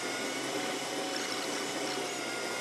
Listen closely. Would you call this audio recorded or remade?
recorded